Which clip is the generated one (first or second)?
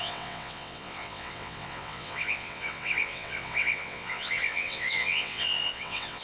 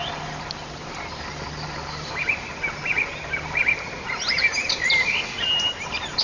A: first